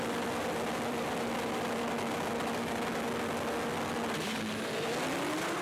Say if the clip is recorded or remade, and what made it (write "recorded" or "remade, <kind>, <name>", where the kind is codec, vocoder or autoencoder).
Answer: recorded